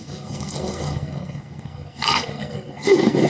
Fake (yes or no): yes